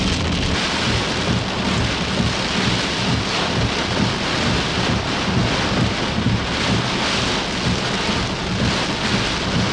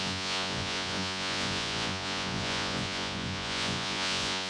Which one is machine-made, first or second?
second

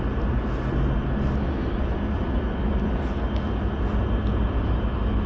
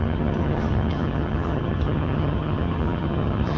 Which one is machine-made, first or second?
second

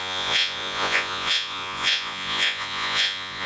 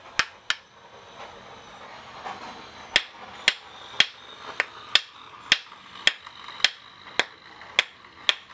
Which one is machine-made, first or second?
first